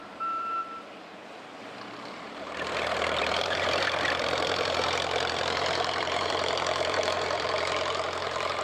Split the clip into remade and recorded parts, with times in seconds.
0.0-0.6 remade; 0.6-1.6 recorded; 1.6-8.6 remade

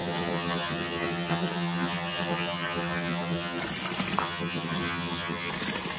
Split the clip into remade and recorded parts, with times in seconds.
0.0-3.6 remade; 3.6-4.2 recorded; 4.2-5.5 remade; 5.5-6.0 recorded

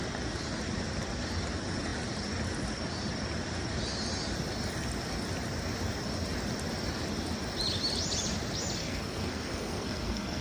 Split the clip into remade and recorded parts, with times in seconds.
0.0-8.8 recorded; 8.8-10.4 remade

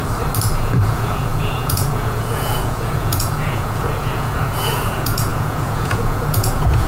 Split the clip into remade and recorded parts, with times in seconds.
0.0-0.6 recorded; 0.6-6.9 remade

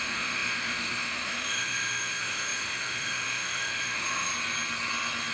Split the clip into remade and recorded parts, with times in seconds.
0.0-4.3 remade; 4.3-5.3 recorded

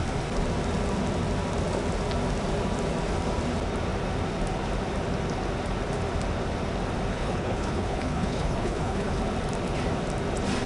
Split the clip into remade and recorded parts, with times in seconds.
0.0-7.1 recorded; 7.1-9.2 remade; 9.2-10.7 recorded